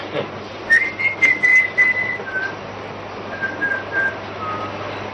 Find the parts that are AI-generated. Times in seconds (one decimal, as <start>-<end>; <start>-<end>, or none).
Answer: none